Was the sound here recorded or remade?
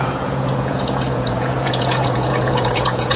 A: remade